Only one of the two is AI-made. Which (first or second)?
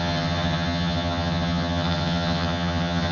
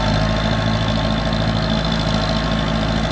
first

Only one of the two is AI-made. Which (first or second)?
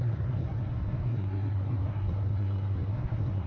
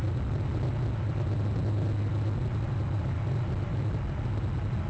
first